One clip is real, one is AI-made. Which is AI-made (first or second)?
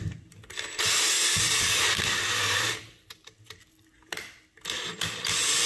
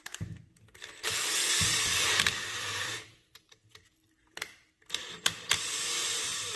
second